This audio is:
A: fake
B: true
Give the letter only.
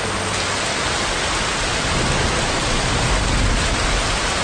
B